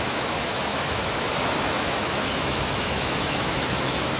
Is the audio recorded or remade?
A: remade